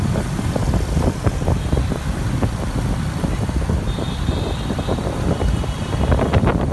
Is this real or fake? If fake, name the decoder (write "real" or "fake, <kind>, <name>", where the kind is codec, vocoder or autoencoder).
fake, vocoder, BigVGAN v2